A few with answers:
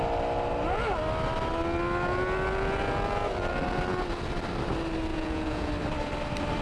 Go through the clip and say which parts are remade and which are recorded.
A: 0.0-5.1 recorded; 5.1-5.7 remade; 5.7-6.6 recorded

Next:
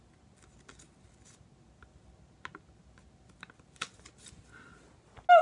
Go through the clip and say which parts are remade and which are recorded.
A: 0.0-5.4 recorded

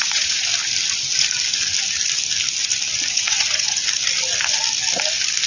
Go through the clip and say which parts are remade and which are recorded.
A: 0.0-0.5 remade; 0.5-3.1 recorded; 3.1-3.8 remade; 3.8-5.5 recorded

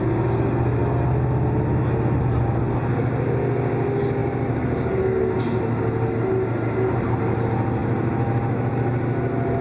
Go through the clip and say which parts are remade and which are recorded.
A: 0.0-9.6 recorded